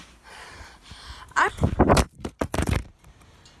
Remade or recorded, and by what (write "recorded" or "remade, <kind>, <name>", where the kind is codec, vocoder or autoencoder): remade, vocoder, BigVGAN v2